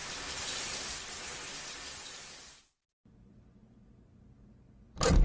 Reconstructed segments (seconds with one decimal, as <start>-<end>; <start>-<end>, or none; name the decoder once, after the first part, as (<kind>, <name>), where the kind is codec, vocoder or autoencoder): none